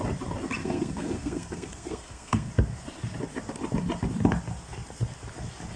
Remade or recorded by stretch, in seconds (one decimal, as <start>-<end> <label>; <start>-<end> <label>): 0.0-0.6 recorded; 0.6-2.5 remade; 2.5-5.8 recorded